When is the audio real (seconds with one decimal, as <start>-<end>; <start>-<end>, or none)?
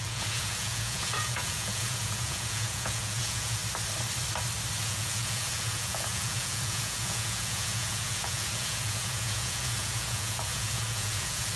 3.6-4.8